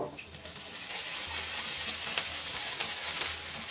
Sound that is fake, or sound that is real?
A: real